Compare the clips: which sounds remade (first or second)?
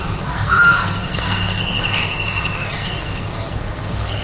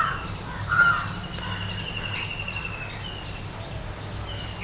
first